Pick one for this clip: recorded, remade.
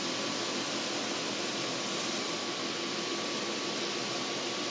recorded